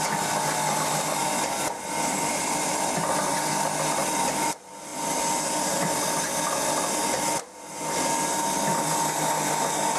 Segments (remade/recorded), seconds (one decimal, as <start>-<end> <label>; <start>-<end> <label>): 0.0-1.2 recorded; 1.2-2.4 remade; 2.4-10.0 recorded